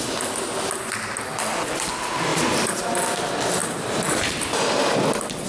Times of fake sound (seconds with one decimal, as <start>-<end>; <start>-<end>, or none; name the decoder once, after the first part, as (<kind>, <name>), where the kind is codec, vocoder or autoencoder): 2.3-2.8 (vocoder, BigVGAN v2); 3.6-4.5